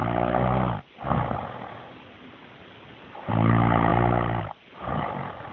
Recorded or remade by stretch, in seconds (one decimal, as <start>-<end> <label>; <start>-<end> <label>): 0.0-5.5 recorded